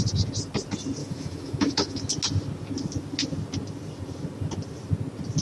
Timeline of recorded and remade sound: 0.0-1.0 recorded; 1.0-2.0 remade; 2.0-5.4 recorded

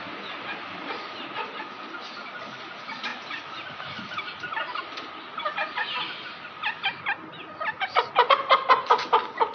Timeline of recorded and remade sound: 0.0-9.5 recorded

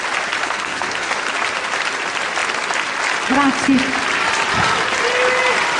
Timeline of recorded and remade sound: 0.0-0.4 recorded; 0.4-1.1 remade; 1.1-5.8 recorded

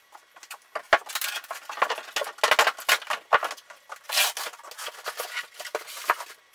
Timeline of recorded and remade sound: 0.0-6.5 recorded

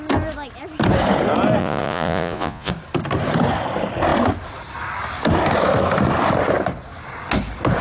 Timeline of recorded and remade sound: 0.0-1.6 recorded; 1.6-2.7 remade; 2.7-7.8 recorded

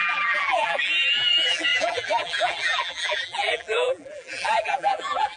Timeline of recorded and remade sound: 0.0-5.4 remade

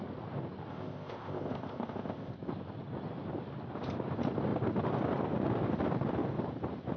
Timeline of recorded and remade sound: 0.0-0.7 recorded; 0.7-2.3 remade; 2.3-7.0 recorded

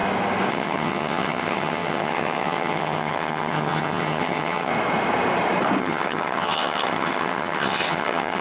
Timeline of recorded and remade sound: 0.0-0.5 recorded; 0.5-4.7 remade; 4.7-5.8 recorded; 5.8-8.4 remade